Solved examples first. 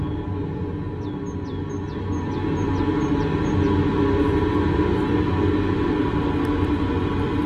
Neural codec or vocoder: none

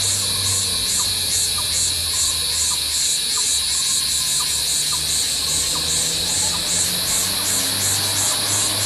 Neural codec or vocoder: none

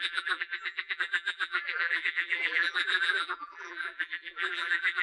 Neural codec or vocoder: vocoder, BigVGAN v2